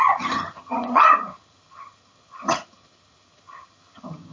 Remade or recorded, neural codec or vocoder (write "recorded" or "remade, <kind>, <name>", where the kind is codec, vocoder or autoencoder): remade, vocoder, HiFi-GAN